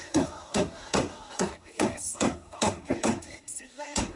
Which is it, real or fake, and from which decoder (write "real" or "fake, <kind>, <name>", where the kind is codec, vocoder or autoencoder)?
fake, codec, SNAC